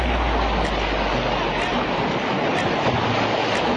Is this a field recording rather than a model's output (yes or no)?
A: yes